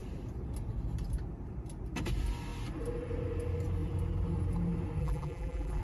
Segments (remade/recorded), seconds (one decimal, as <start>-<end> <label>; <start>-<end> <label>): 0.0-5.0 recorded; 5.0-5.8 remade